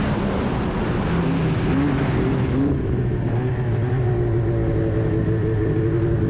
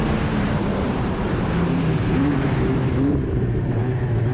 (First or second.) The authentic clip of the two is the first